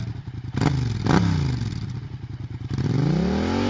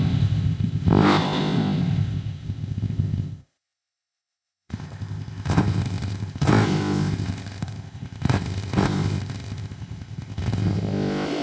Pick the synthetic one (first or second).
second